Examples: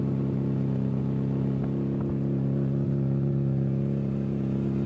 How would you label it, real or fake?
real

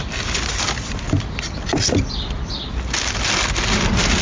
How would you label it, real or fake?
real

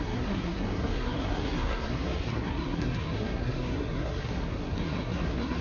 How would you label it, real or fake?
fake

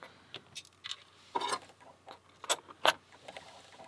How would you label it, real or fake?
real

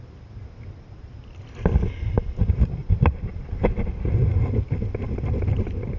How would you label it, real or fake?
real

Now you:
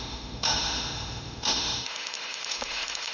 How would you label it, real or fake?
fake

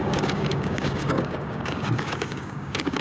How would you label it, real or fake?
fake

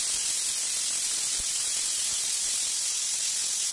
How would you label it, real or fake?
real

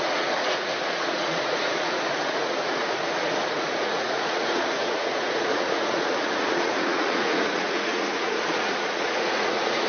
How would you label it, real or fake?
fake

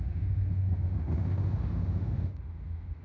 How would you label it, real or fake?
fake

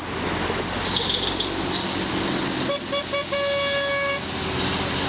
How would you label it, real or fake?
real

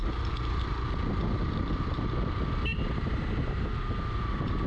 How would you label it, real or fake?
real